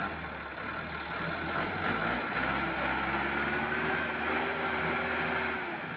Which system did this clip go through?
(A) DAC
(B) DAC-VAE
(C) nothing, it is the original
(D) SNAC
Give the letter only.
C